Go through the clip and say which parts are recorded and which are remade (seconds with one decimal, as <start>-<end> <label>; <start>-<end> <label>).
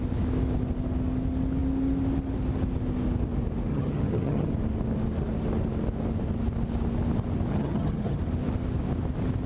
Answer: 0.0-3.7 recorded; 3.7-4.5 remade; 4.5-7.5 recorded; 7.5-8.2 remade; 8.2-9.5 recorded